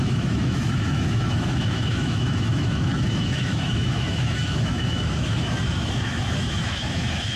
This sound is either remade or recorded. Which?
remade